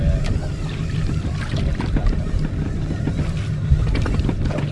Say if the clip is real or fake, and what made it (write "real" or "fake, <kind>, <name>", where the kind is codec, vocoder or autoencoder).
real